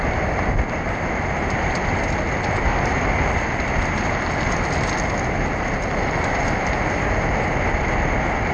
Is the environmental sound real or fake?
real